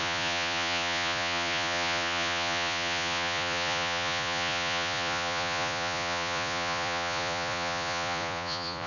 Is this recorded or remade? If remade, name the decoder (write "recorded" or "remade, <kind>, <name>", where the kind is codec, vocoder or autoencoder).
remade, vocoder, Vocos